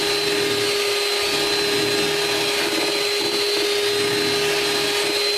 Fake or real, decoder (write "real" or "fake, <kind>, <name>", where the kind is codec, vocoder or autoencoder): real